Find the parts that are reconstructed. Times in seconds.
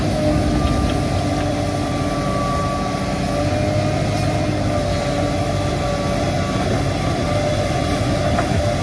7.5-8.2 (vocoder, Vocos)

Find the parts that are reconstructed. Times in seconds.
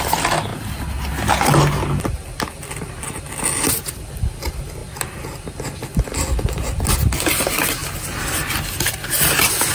none